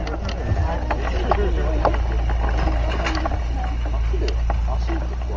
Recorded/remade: recorded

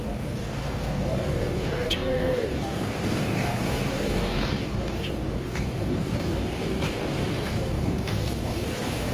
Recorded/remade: remade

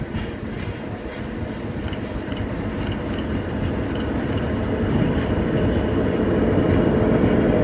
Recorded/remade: recorded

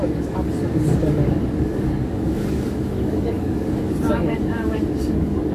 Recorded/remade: remade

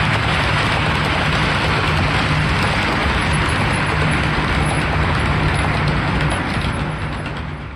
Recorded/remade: recorded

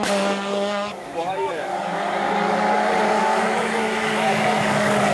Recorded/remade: remade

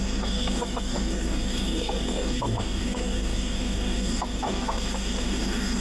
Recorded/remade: remade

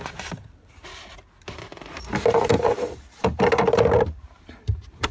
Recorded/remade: recorded